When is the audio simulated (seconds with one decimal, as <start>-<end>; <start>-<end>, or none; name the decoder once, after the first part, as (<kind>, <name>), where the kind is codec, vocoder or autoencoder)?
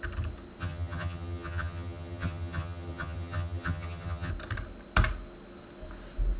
0.6-4.3 (vocoder, HiFi-GAN)